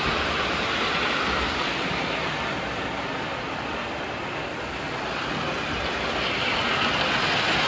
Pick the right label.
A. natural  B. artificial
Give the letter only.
A